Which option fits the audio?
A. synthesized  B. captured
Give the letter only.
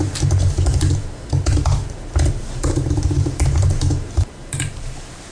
A